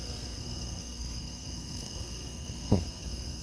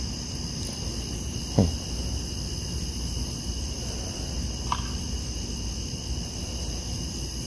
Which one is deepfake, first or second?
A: first